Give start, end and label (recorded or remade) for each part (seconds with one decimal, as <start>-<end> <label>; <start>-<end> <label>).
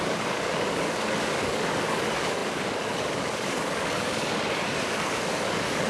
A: 0.0-5.9 remade